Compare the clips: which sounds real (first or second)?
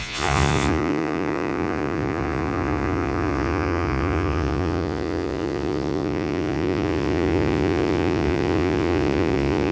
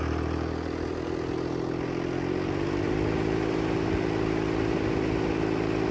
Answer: second